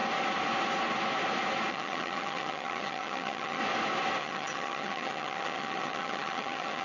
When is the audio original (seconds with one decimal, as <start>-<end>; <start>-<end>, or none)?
0.0-1.7; 3.6-4.2